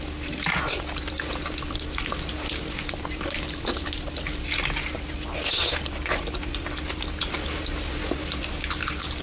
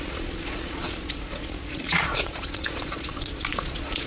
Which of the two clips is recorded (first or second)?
first